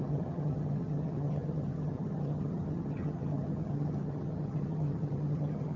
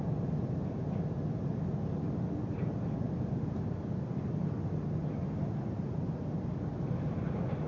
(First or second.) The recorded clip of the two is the second